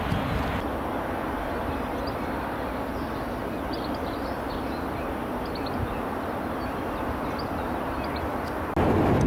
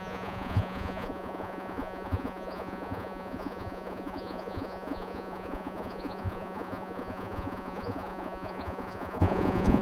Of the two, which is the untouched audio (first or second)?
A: first